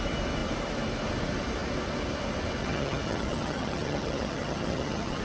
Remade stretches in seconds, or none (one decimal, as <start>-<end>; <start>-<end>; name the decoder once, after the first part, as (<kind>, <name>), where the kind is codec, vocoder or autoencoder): 2.6-5.2 (vocoder, HiFi-GAN)